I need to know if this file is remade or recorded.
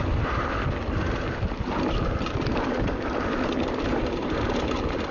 recorded